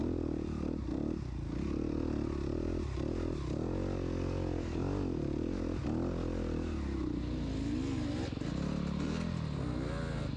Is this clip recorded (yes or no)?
yes